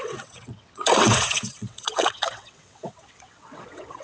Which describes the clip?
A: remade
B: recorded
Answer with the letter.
A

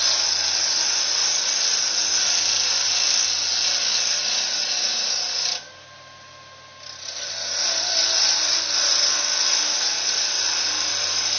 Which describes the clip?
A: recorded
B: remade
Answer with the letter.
A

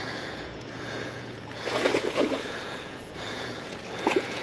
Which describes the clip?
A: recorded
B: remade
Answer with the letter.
B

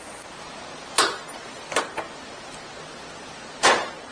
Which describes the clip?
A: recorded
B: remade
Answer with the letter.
A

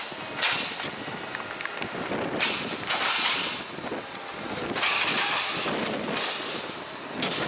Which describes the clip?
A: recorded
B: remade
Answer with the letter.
A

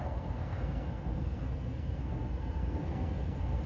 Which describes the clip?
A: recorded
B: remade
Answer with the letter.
B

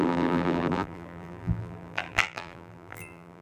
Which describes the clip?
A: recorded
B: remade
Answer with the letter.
B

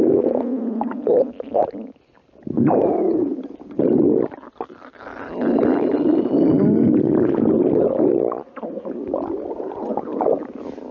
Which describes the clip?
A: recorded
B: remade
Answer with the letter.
A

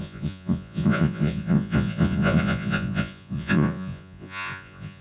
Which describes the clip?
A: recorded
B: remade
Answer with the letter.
B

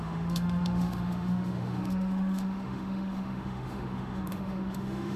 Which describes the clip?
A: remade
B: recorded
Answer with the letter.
A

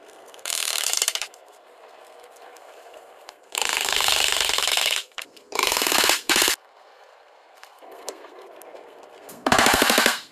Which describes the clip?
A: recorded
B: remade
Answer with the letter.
B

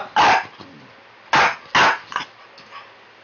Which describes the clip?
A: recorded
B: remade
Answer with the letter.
A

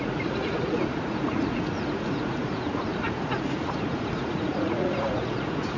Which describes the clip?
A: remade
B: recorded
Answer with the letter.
A